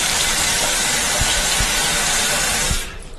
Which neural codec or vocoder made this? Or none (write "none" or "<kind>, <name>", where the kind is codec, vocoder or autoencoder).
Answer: vocoder, BigVGAN v2